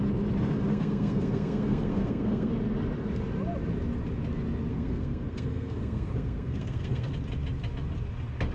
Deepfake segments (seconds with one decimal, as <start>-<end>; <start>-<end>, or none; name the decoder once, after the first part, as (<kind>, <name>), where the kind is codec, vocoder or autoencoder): 0.7-2.5 (codec, SNAC); 4.7-7.1